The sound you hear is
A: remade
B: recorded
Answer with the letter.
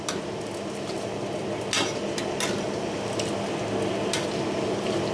B